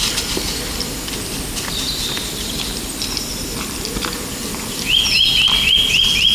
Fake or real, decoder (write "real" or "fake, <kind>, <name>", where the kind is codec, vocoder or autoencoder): real